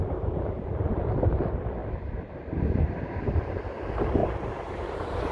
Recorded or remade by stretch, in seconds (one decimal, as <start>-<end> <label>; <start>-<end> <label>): 0.0-1.8 recorded; 1.8-3.2 remade; 3.2-4.2 recorded; 4.2-5.3 remade